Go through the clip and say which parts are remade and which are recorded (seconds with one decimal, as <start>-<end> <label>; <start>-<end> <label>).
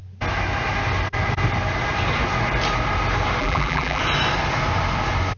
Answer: 0.0-3.4 recorded; 3.4-4.0 remade; 4.0-5.4 recorded